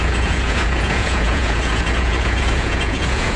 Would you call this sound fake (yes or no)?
yes